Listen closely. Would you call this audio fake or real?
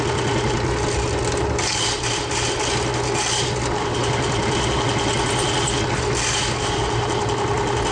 real